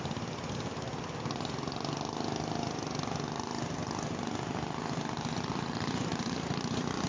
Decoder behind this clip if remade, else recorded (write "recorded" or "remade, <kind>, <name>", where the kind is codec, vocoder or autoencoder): recorded